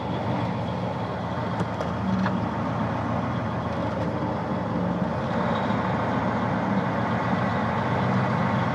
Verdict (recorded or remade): recorded